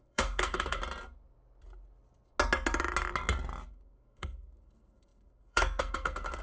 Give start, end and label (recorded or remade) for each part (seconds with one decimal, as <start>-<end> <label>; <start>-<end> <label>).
0.0-0.8 remade; 0.8-3.7 recorded; 3.7-6.4 remade